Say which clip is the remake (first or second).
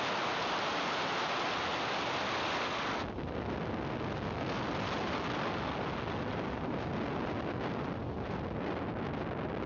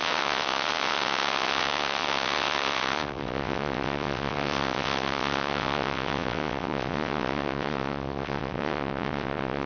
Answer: second